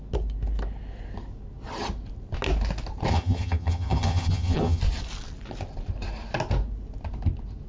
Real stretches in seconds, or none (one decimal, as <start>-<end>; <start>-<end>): 0.0-3.1; 4.8-7.7